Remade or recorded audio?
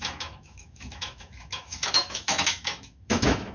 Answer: remade